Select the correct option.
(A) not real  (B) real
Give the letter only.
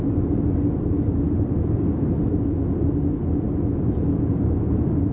B